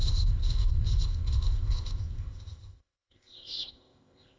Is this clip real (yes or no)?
no